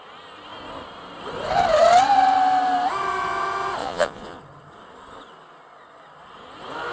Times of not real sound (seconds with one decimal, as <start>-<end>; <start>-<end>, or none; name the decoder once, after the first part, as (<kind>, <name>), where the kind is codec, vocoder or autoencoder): 3.8-4.4 (vocoder, Vocos)

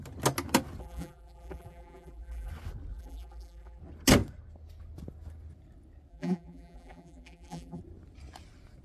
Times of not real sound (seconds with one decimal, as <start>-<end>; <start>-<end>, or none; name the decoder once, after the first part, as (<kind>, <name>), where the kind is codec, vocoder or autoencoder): 0.8-2.5 (vocoder, BigVGAN v2); 2.9-3.8; 6.1-7.8

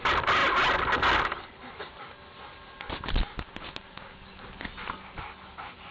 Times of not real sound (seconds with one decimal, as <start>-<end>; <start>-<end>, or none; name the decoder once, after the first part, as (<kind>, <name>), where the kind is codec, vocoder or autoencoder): none

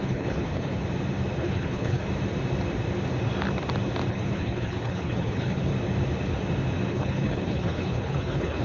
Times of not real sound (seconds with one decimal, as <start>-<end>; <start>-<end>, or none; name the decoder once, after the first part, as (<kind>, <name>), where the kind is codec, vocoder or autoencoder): 0.0-0.8 (codec, HILCodec); 1.4-2.0; 4.1-5.7; 6.9-8.6